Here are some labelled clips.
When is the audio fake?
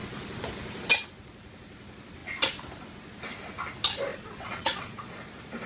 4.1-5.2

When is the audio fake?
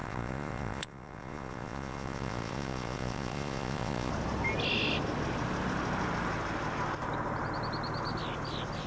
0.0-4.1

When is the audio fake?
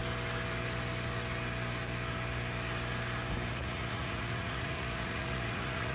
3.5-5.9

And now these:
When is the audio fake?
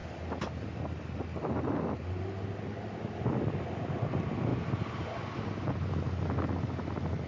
none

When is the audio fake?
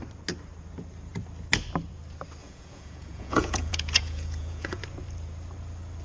2.4-4.8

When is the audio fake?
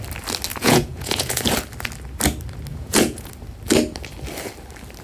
0.5-1.4; 2.7-3.3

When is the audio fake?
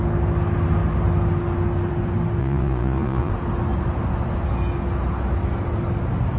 2.4-3.3